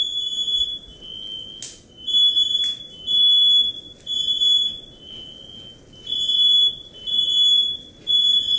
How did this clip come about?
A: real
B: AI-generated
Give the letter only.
A